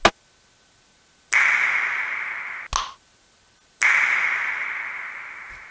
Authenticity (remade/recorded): recorded